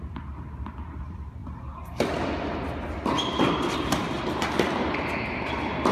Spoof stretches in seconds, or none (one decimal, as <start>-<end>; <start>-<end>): none